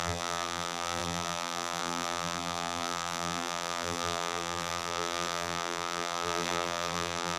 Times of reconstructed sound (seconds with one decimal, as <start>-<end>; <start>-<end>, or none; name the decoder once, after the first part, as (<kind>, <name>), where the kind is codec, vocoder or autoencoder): 0.0-7.4 (vocoder, BigVGAN v2)

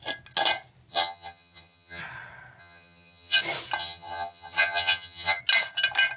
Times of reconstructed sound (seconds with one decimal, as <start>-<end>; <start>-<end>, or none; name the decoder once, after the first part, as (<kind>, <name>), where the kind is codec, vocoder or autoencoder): 0.9-2.0 (vocoder, HiFi-GAN); 2.6-3.4; 3.8-5.4

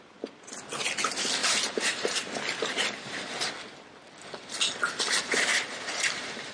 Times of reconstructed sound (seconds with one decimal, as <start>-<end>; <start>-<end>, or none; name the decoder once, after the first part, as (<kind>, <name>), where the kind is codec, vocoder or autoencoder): 1.4-3.5 (vocoder, BigVGAN v2); 5.5-6.5

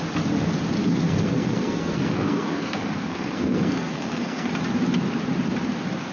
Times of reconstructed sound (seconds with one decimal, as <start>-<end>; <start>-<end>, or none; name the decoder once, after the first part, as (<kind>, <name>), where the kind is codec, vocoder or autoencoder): 0.8-4.5 (codec, SNAC)

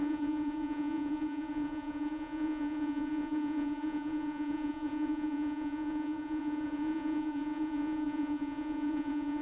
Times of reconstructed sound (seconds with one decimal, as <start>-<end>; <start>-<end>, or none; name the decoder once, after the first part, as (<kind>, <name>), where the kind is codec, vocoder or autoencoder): 0.0-9.4 (vocoder, Vocos)